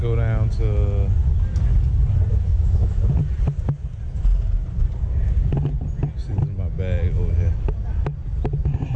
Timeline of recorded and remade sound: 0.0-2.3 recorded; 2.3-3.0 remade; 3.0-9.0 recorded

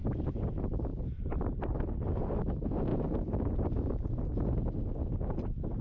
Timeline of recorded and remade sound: 0.0-5.8 recorded

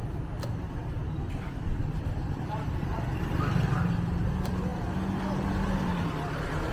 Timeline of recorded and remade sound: 0.0-6.7 recorded

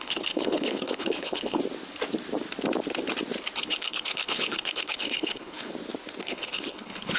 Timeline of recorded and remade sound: 0.0-1.6 remade; 1.6-3.6 recorded; 3.6-5.7 remade; 5.7-6.2 recorded; 6.2-7.2 remade

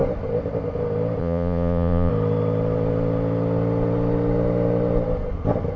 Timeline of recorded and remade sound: 0.0-1.2 recorded; 1.2-2.1 remade; 2.1-5.8 recorded

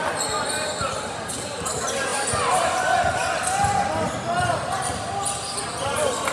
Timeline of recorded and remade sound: 0.0-6.3 recorded

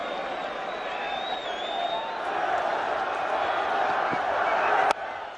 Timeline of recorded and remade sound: 0.0-5.4 recorded

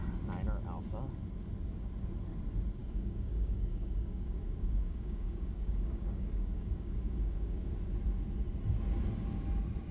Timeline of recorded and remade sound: 0.0-2.8 recorded; 2.8-7.7 remade; 7.7-9.9 recorded